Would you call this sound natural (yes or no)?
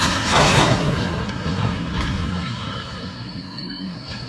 no